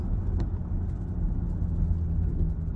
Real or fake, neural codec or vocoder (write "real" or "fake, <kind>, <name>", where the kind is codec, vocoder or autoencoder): real